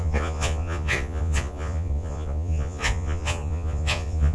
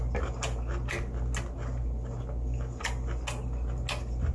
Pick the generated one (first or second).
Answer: first